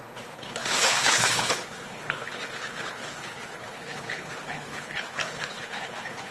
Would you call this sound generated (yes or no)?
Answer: yes